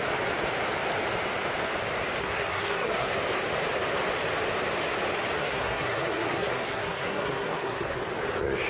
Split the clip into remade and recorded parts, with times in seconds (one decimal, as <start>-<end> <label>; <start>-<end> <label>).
0.0-2.2 recorded; 2.2-3.1 remade; 3.1-5.4 recorded; 5.4-8.0 remade; 8.0-8.7 recorded